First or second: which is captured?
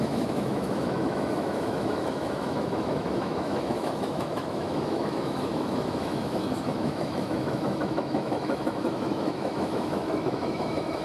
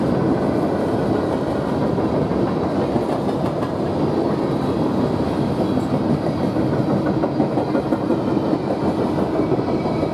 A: second